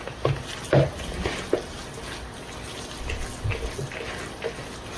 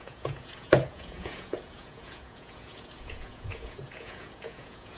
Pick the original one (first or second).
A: first